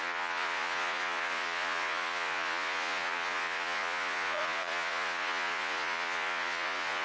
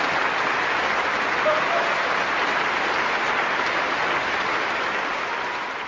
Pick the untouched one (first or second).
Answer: second